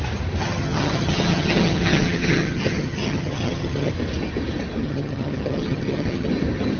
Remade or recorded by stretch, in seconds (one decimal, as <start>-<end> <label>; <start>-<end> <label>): 0.0-0.4 recorded; 0.4-3.9 remade; 3.9-4.8 recorded; 4.8-6.3 remade; 6.3-6.8 recorded